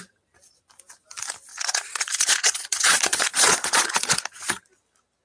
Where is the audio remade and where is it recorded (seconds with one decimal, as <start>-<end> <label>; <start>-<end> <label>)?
0.0-1.5 recorded; 1.5-4.6 remade; 4.6-5.2 recorded